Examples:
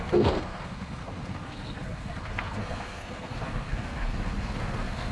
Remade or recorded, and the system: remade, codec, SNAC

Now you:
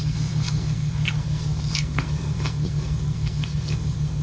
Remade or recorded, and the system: remade, codec, SNAC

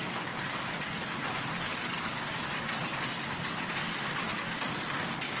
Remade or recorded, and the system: recorded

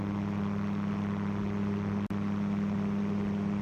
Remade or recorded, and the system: recorded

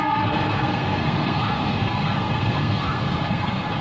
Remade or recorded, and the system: remade, codec, SNAC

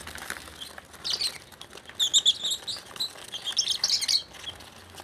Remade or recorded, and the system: recorded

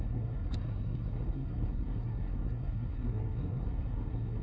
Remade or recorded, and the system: remade, codec, SNAC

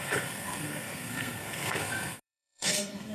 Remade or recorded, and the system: remade, codec, SNAC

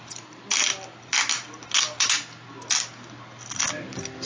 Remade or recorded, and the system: recorded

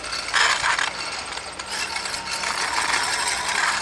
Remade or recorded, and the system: recorded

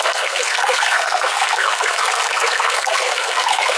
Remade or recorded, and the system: remade, codec, SNAC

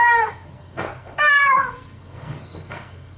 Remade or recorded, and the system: remade, codec, SNAC